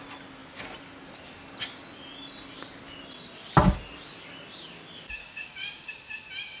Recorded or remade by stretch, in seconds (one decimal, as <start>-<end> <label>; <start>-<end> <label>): 0.0-5.2 recorded; 5.2-5.9 remade; 5.9-6.6 recorded